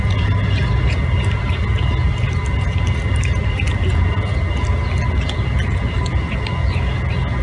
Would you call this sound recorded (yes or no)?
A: yes